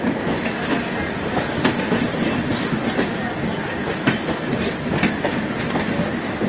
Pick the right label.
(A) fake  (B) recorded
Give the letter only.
B